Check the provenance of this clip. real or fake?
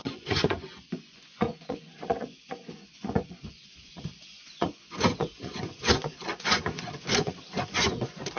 fake